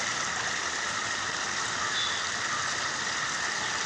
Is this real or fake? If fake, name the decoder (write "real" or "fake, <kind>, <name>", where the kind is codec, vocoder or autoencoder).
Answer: real